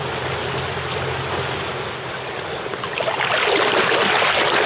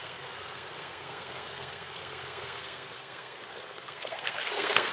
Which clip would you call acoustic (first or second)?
first